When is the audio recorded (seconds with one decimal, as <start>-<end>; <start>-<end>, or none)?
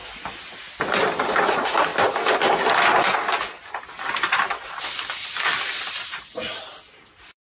0.0-1.5; 1.9-5.2